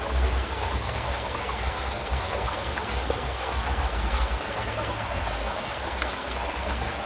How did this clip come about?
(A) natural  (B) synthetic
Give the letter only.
B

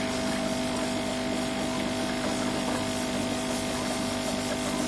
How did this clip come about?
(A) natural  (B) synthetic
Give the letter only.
A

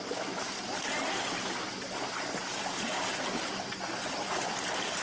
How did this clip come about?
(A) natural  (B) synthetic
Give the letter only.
A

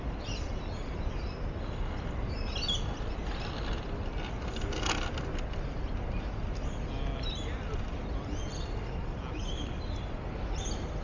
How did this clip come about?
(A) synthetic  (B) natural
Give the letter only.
B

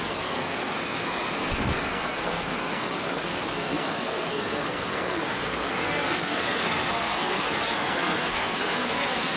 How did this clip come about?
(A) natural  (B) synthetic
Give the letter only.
B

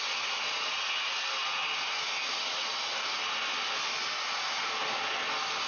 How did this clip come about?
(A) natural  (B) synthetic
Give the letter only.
A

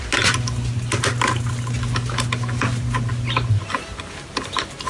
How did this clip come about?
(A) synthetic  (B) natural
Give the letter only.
B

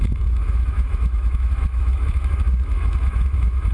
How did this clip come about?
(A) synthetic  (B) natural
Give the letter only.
A